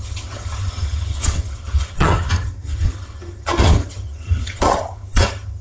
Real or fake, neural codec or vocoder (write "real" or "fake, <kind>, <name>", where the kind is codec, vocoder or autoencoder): fake, vocoder, HiFi-GAN